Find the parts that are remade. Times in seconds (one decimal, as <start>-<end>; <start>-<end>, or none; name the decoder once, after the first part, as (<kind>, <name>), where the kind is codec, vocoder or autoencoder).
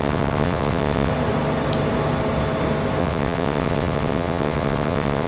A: 0.0-1.1 (vocoder, WaveNeXt); 3.0-5.3